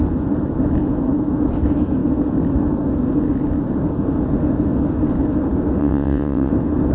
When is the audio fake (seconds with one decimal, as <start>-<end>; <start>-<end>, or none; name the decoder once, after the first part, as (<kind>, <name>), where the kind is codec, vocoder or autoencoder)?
5.8-6.5 (vocoder, WaveNeXt)